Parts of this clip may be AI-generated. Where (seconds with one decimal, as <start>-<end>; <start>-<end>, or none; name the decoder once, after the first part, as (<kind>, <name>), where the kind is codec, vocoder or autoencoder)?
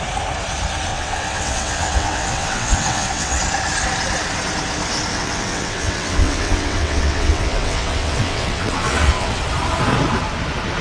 0.9-3.4 (vocoder, WaveNeXt); 5.1-9.4